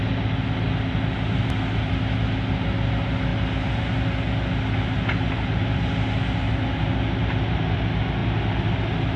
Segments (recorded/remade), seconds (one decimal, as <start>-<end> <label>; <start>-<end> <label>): 0.0-9.2 recorded